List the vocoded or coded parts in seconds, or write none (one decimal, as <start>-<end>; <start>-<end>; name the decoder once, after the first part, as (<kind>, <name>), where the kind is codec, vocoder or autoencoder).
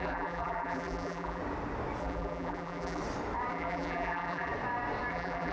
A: 0.0-1.4 (vocoder, BigVGAN v2); 2.0-3.0; 3.5-4.5; 5.1-5.5